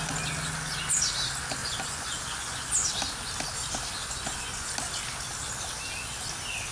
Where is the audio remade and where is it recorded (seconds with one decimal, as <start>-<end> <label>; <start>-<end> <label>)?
0.0-1.6 recorded; 1.6-2.9 remade; 2.9-4.0 recorded; 4.0-4.7 remade; 4.7-6.7 recorded